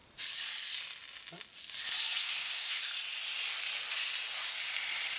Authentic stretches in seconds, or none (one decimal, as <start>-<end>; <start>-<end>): 0.0-2.2; 2.8-5.2